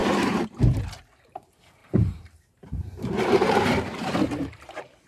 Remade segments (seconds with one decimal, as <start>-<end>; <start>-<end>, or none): 0.0-0.8; 1.8-5.1